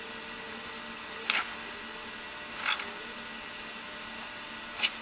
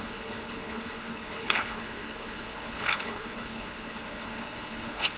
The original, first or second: first